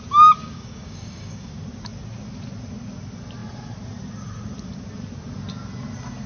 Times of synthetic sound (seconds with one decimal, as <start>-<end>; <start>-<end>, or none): 0.4-1.5